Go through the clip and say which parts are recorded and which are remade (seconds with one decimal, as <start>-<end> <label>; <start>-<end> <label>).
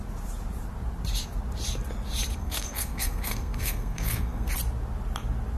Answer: 0.0-2.4 recorded; 2.4-4.5 remade; 4.5-5.6 recorded